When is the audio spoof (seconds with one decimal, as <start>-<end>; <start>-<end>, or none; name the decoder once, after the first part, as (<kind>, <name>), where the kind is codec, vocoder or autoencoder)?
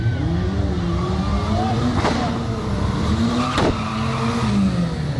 1.3-3.4 (vocoder, BigVGAN v2)